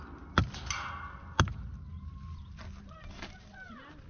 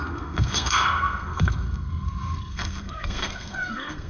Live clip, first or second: first